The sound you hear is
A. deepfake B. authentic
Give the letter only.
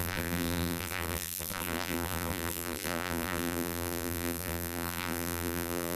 A